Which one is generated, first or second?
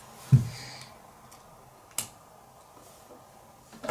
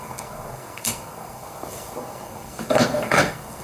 second